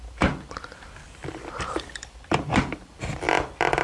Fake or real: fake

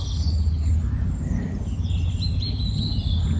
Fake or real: real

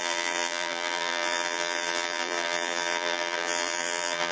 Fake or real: fake